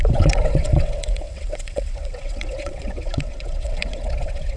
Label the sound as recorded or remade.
remade